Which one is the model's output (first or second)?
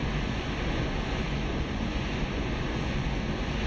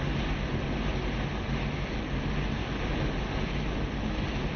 first